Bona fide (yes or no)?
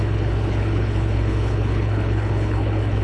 no